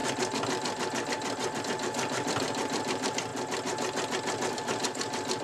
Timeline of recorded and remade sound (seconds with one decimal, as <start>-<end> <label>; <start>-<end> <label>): 0.0-1.6 recorded; 1.6-3.3 remade; 3.3-4.5 recorded; 4.5-5.4 remade

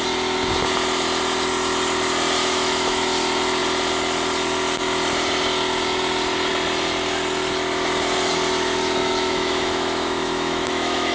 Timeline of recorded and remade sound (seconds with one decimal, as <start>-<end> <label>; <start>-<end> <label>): 0.0-2.4 recorded; 2.4-3.0 remade; 3.0-9.0 recorded; 9.0-11.1 remade

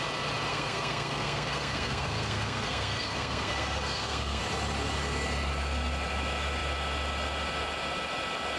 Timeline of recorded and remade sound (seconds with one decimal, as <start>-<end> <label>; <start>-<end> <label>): 0.0-0.5 recorded; 0.5-4.4 remade; 4.4-8.6 recorded